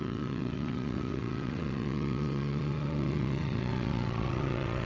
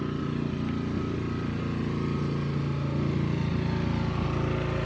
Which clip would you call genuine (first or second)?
second